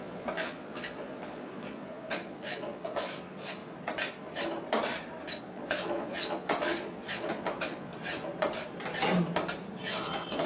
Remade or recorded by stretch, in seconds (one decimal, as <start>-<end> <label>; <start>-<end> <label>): 0.0-3.6 remade; 3.6-5.4 recorded; 5.4-7.9 remade; 7.9-9.9 recorded; 9.9-10.5 remade